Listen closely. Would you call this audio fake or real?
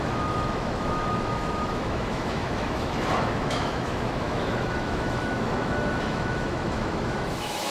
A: fake